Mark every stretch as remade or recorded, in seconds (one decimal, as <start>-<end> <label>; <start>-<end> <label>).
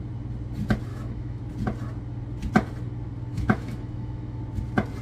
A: 0.0-0.9 recorded; 0.9-1.4 remade; 1.4-3.3 recorded; 3.3-4.4 remade; 4.4-5.0 recorded